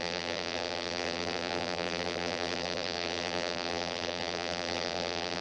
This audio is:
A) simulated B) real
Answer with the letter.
A